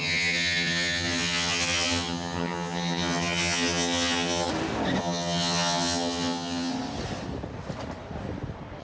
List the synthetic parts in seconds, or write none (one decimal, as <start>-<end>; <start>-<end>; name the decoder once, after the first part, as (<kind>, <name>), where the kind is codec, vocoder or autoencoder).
0.0-4.5 (vocoder, HiFi-GAN); 5.0-6.7